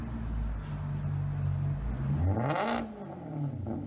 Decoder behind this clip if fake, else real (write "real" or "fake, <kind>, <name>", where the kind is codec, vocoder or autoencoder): real